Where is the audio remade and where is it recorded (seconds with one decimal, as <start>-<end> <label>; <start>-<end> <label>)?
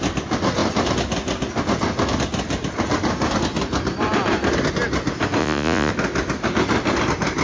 0.0-5.4 recorded; 5.4-5.9 remade; 5.9-7.4 recorded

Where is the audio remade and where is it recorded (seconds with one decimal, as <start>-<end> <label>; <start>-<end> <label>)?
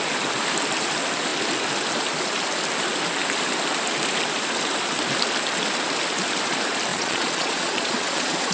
0.0-6.9 recorded; 6.9-8.5 remade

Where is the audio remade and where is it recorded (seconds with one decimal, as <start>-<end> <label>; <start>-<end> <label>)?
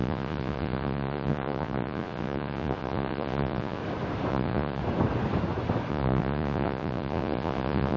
0.0-3.8 remade; 3.8-4.3 recorded; 4.3-4.8 remade; 4.8-5.9 recorded; 5.9-8.0 remade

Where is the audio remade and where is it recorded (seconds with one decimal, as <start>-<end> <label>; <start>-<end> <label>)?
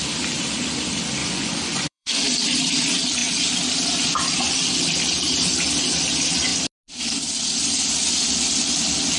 0.0-1.2 recorded; 1.2-2.2 remade; 2.2-9.2 recorded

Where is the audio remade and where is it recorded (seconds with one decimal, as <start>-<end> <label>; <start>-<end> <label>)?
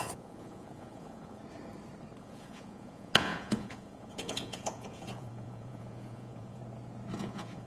0.0-1.4 remade; 1.4-2.2 recorded; 2.2-6.6 remade; 6.6-7.2 recorded; 7.2-7.7 remade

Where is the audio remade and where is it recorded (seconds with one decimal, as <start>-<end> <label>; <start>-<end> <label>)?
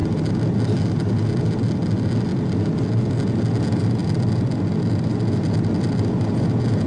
0.0-6.9 recorded